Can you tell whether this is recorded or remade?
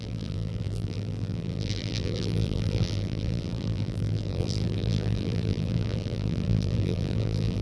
remade